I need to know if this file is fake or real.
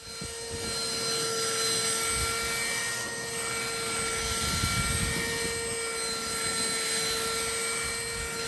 real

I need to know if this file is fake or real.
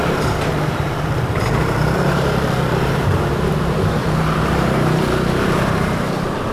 fake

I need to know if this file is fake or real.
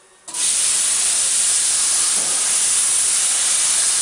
real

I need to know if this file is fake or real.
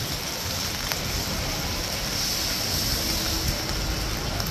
real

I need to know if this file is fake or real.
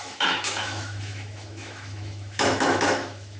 fake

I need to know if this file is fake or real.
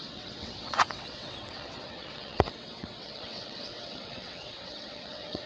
fake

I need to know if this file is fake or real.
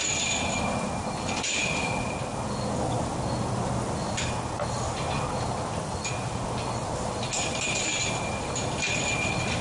real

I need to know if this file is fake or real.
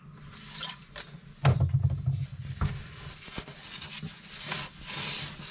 real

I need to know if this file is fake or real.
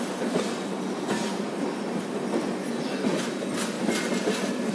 real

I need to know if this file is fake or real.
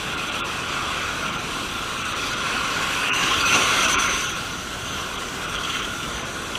fake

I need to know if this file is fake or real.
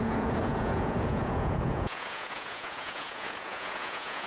fake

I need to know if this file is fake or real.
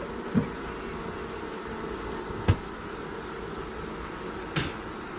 real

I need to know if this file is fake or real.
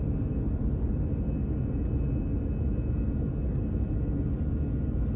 real